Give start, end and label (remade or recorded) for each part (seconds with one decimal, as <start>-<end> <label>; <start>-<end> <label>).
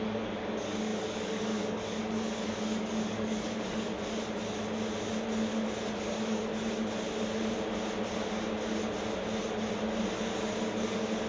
0.0-3.9 remade; 3.9-5.9 recorded; 5.9-6.5 remade; 6.5-10.6 recorded; 10.6-11.3 remade